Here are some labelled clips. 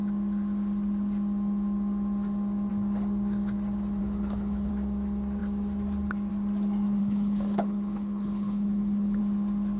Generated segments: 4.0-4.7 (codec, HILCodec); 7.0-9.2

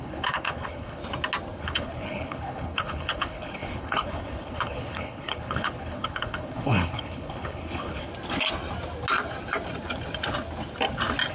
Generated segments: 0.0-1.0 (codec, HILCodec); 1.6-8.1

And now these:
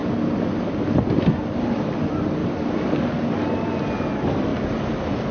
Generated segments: none

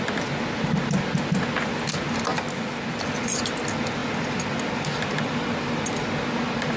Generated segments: none

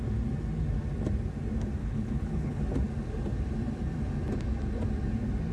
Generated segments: 1.8-2.6 (codec, HILCodec)